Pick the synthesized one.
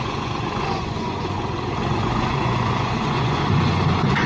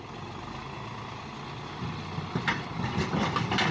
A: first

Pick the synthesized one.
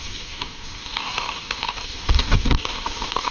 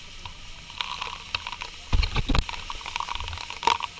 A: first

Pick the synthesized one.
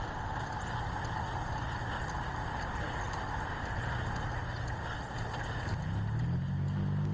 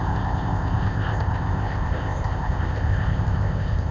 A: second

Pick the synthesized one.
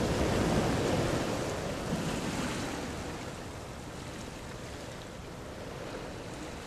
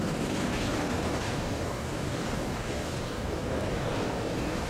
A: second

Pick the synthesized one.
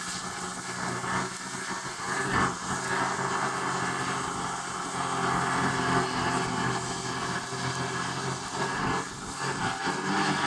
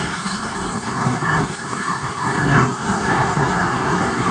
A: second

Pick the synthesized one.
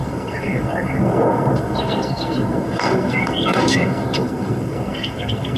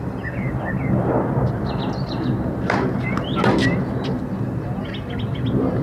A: first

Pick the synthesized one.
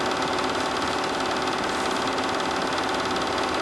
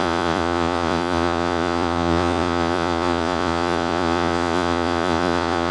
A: second